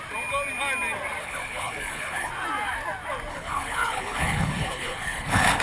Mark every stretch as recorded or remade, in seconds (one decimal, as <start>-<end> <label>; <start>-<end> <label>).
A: 0.0-1.2 recorded; 1.2-2.3 remade; 2.3-3.3 recorded; 3.3-5.6 remade